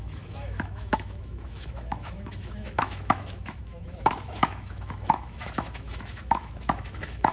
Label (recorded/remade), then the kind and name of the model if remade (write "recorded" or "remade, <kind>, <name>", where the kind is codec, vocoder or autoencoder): remade, autoencoder, DAC-VAE